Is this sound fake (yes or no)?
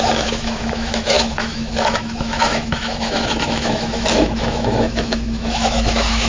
yes